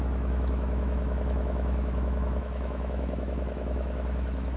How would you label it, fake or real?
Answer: fake